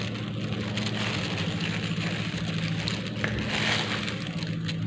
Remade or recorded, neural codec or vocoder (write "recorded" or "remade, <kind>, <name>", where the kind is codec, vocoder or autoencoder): recorded